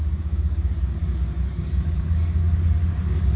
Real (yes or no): no